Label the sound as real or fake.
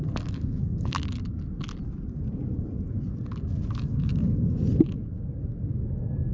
real